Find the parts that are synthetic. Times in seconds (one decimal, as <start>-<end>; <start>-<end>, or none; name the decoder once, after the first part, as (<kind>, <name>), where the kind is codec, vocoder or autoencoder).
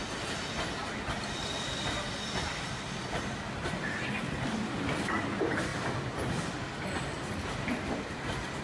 none